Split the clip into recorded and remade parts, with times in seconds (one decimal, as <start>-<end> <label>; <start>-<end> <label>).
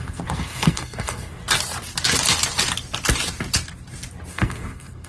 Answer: 0.0-1.4 remade; 1.4-4.3 recorded; 4.3-5.1 remade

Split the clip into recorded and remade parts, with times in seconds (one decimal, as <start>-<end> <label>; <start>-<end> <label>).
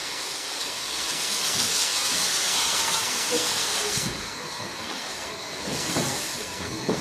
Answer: 0.0-7.0 remade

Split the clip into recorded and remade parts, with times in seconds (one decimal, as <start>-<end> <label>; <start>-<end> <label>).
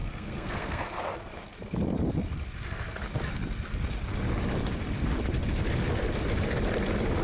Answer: 0.0-0.8 remade; 0.8-7.2 recorded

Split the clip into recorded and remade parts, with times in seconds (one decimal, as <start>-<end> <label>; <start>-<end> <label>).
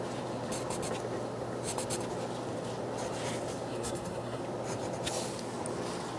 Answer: 0.0-3.7 recorded; 3.7-4.4 remade; 4.4-6.2 recorded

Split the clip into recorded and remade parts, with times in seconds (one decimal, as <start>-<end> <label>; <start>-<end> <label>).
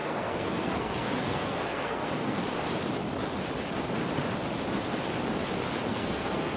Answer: 0.0-2.4 remade; 2.4-5.9 recorded; 5.9-6.6 remade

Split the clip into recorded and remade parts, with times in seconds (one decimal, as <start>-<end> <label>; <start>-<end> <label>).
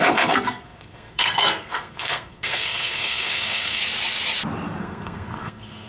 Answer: 0.0-3.8 remade; 3.8-4.8 recorded; 4.8-5.9 remade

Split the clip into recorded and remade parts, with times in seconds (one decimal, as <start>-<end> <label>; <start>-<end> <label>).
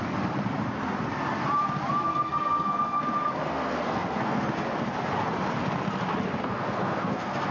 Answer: 0.0-2.1 recorded; 2.1-3.0 remade; 3.0-3.5 recorded; 3.5-4.5 remade; 4.5-6.4 recorded; 6.4-7.5 remade